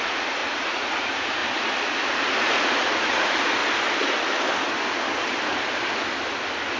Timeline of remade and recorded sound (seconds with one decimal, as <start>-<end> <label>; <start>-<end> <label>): 0.0-1.4 remade; 1.4-2.4 recorded; 2.4-3.6 remade; 3.6-6.8 recorded